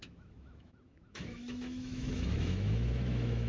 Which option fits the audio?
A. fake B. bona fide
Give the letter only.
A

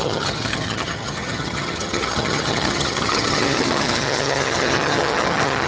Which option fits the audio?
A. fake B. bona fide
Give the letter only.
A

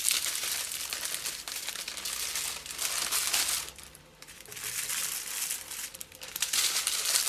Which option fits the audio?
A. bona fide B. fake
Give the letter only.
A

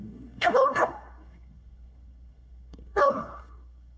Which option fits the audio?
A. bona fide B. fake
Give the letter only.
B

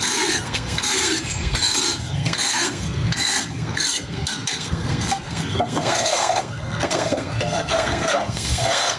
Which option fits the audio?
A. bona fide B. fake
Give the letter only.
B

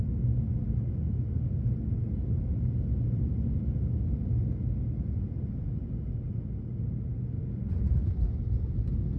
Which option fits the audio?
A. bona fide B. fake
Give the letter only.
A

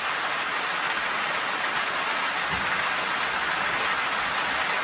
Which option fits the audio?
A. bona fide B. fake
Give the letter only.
A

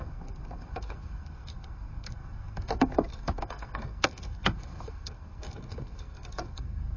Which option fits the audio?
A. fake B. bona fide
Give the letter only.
A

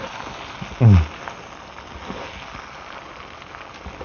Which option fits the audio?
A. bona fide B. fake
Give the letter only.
A